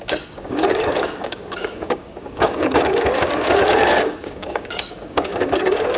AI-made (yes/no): yes